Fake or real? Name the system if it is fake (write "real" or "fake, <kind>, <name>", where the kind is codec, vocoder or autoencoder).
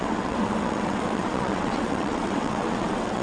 fake, vocoder, WaveNeXt